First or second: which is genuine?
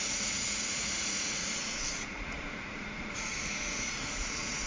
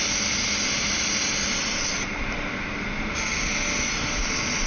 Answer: second